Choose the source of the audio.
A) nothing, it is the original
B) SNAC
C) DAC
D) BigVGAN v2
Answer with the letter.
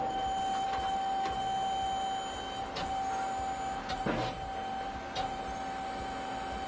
A